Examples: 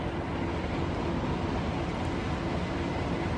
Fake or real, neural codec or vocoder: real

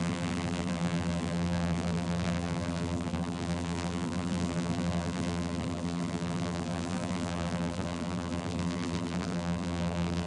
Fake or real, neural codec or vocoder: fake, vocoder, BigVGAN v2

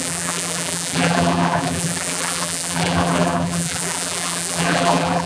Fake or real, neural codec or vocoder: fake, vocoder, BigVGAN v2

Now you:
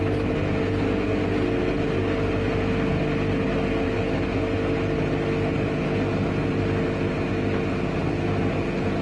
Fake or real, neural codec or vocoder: real